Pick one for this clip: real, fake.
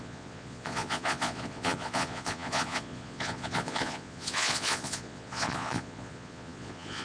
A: fake